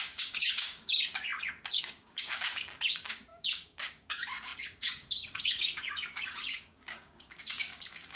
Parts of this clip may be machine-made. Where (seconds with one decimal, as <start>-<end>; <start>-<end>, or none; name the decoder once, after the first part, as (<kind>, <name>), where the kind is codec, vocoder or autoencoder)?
0.0-8.2 (codec, DAC)